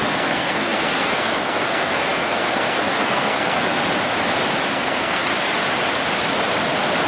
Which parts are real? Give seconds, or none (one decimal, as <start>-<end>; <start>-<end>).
3.8-4.7; 5.2-7.1